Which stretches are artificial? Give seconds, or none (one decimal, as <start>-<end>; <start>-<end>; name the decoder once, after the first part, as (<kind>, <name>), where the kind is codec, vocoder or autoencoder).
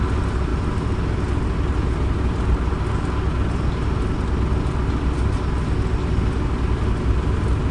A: none